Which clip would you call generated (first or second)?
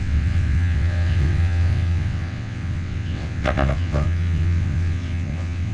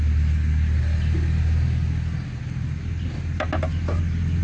first